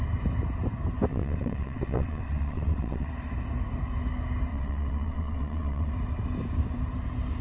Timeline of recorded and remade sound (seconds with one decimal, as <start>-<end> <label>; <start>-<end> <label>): 0.0-1.1 recorded; 1.1-3.1 remade; 3.1-4.5 recorded; 4.5-5.9 remade; 5.9-7.4 recorded